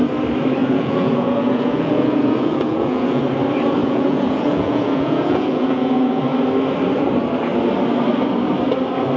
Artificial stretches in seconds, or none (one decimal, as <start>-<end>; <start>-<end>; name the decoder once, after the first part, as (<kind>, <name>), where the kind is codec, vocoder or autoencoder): 0.6-3.2 (vocoder, Vocos); 3.8-6.2